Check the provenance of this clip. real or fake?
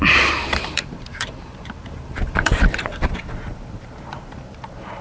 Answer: fake